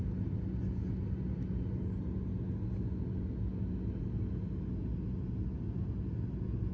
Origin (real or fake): real